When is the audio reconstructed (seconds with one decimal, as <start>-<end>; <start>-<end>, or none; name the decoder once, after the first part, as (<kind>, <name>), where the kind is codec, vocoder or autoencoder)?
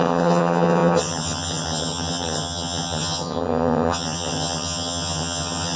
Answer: 0.0-5.8 (vocoder, HiFi-GAN)